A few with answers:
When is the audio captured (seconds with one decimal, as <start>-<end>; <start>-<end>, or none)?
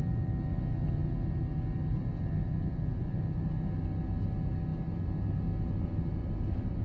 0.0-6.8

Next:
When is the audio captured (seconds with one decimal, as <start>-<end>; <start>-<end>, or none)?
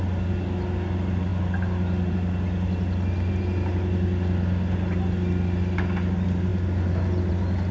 0.0-7.7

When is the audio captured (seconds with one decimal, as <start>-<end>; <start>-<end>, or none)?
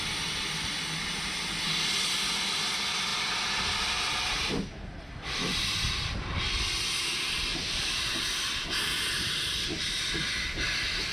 0.0-7.5; 10.0-11.1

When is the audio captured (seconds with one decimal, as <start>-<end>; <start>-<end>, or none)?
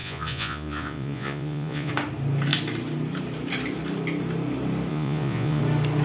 1.9-4.9; 5.6-6.0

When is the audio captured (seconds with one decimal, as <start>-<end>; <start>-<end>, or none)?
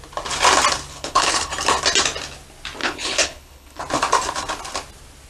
0.0-0.9; 1.5-2.8; 3.8-5.3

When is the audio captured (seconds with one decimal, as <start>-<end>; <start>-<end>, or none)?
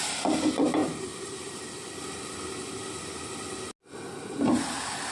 0.0-0.8; 2.0-5.1